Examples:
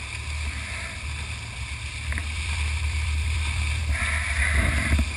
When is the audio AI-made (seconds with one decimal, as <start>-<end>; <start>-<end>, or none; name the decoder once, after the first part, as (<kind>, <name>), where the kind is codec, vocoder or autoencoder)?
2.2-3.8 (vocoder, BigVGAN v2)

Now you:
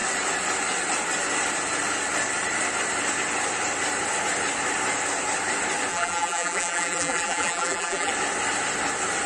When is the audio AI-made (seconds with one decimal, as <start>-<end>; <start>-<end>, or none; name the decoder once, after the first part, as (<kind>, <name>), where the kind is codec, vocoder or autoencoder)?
5.9-8.1 (vocoder, BigVGAN v2)

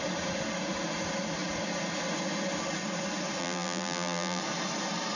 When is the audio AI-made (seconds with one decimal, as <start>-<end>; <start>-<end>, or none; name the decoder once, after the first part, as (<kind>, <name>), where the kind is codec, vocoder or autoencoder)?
3.4-4.4 (vocoder, BigVGAN v2)

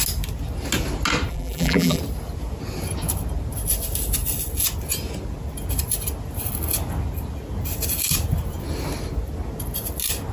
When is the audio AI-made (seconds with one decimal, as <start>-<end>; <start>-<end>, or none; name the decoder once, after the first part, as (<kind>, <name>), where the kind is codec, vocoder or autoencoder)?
1.3-2.0 (vocoder, BigVGAN v2)